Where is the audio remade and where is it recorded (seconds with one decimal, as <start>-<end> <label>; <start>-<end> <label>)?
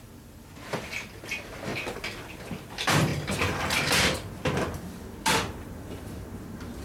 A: 0.0-1.7 remade; 1.7-2.2 recorded; 2.2-3.1 remade; 3.1-6.8 recorded